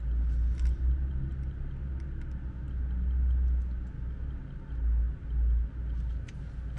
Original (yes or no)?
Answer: yes